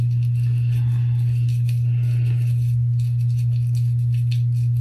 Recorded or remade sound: recorded